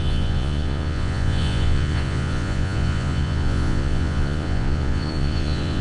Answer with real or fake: fake